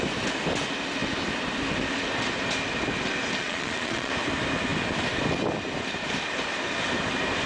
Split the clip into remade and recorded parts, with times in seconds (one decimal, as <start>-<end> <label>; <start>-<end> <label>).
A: 0.0-3.4 recorded; 3.4-4.1 remade; 4.1-7.5 recorded